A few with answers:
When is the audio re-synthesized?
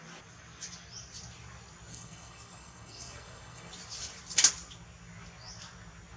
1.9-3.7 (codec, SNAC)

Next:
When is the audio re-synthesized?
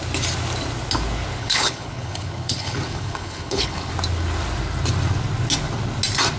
1.4-3.9 (codec, HILCodec)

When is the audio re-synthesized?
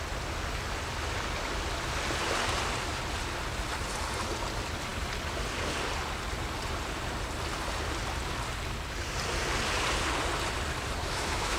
11.0-11.6 (autoencoder, DAC-VAE)